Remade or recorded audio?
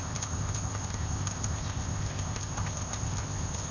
remade